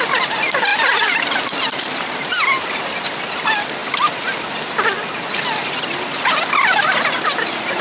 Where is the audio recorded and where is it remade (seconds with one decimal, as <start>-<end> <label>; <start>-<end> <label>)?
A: 0.0-7.8 recorded